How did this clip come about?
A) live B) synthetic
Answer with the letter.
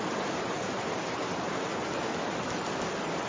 A